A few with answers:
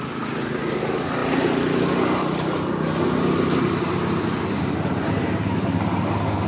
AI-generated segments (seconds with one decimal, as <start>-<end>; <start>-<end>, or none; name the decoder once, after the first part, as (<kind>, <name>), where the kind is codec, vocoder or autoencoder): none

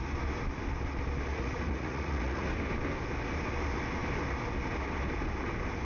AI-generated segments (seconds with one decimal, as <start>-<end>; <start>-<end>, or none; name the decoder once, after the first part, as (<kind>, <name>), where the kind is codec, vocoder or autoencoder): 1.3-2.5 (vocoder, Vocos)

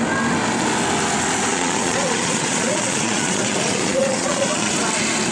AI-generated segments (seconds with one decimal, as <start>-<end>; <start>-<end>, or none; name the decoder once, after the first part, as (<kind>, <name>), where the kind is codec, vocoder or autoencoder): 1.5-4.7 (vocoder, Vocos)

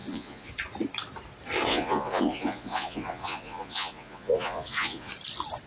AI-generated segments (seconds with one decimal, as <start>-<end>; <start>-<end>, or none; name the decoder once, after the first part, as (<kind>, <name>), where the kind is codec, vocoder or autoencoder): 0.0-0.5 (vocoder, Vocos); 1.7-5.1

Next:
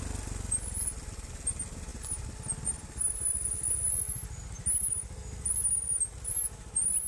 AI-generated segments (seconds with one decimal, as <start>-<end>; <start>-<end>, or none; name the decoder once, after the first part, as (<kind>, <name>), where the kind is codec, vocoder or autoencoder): none

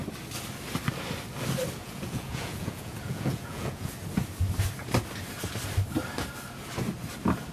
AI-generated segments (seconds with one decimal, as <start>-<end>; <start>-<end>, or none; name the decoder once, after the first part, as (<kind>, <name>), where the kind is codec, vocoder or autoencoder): 1.8-3.9 (vocoder, Vocos)

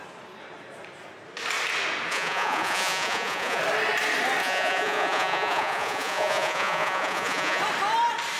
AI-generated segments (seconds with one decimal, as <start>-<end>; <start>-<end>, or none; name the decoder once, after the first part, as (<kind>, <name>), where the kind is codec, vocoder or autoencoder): 2.1-3.6 (vocoder, Vocos); 4.4-7.6